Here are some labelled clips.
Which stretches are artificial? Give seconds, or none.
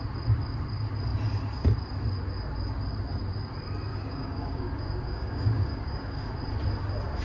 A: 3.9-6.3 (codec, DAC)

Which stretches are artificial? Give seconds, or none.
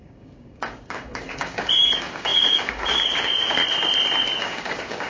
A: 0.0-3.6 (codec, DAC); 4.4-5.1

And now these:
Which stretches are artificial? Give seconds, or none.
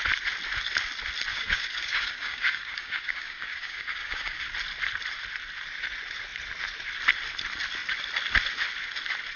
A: 1.3-4.5 (codec, DAC)